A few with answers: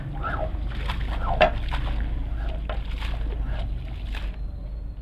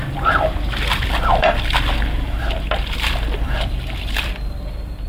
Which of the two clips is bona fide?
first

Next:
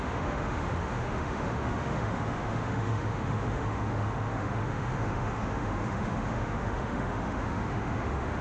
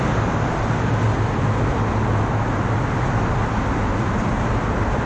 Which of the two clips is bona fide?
second